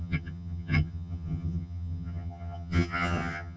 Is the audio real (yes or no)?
no